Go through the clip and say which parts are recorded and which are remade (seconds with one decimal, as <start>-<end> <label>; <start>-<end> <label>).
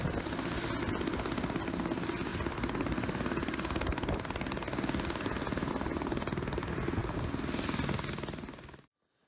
0.0-9.3 recorded